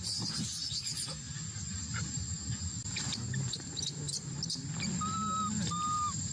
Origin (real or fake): real